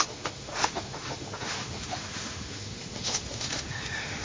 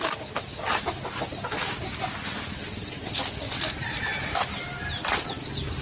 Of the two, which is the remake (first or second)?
first